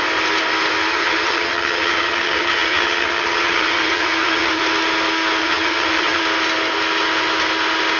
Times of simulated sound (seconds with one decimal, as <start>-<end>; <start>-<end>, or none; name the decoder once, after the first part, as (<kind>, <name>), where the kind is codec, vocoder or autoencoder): 0.9-4.6 (vocoder, HiFi-GAN); 5.4-6.2